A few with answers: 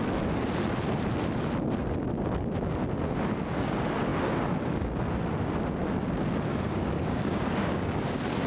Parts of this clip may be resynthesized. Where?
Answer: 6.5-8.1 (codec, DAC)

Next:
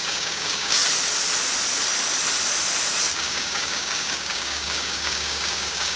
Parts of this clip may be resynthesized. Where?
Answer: 0.0-0.8 (codec, DAC); 3.1-6.0

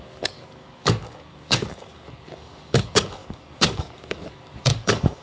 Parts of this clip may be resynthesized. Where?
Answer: 0.0-5.2 (codec, DAC)